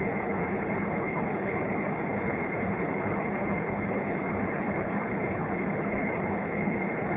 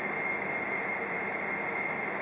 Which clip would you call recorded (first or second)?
second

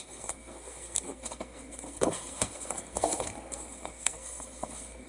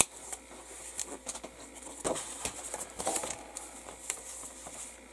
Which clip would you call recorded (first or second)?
second